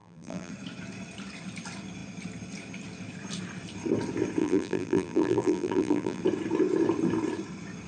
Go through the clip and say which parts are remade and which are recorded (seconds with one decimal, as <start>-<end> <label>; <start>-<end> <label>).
0.0-0.5 remade; 0.5-4.4 recorded; 4.4-6.2 remade; 6.2-7.9 recorded